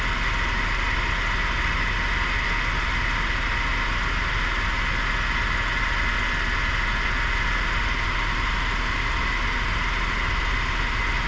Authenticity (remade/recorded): recorded